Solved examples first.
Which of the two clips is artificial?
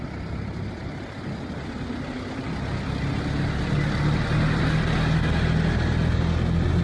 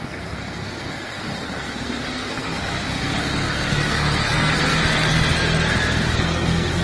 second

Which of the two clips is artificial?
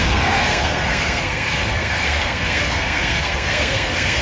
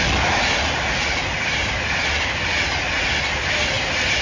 first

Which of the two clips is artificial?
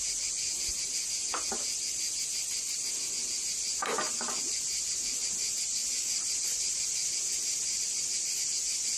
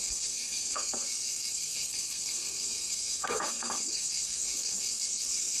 second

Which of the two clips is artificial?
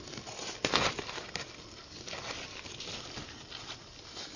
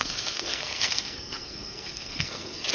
second